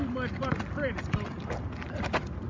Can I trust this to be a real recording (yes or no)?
yes